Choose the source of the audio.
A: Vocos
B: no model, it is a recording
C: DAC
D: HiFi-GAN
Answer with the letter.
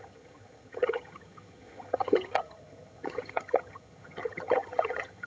D